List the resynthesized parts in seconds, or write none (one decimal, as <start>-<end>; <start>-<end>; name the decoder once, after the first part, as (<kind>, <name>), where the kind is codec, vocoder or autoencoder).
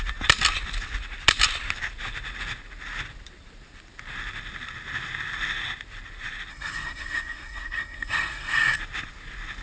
6.5-8.8 (codec, SNAC)